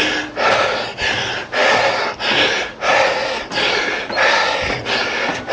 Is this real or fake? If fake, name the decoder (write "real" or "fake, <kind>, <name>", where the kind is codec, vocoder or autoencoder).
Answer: real